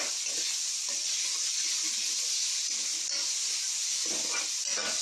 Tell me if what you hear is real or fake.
real